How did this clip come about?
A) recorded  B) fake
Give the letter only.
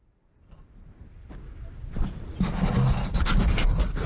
A